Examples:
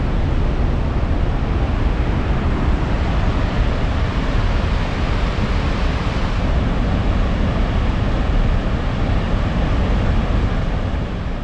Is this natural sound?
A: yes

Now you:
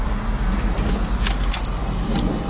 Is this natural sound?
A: yes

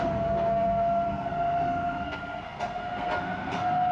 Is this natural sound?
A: no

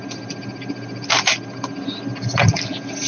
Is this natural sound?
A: yes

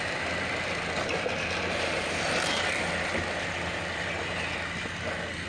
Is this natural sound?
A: yes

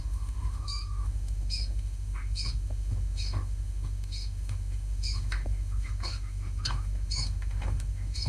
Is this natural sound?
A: no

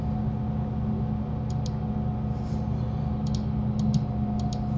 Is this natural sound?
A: yes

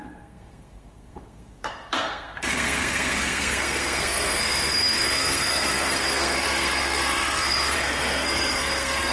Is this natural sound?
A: no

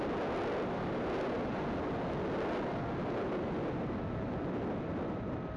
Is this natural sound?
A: yes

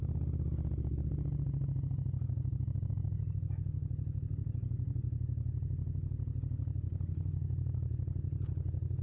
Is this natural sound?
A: yes